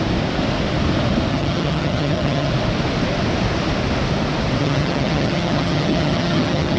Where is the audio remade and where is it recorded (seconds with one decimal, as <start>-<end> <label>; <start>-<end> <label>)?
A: 0.0-1.3 recorded; 1.3-2.5 remade; 2.5-4.6 recorded; 4.6-6.8 remade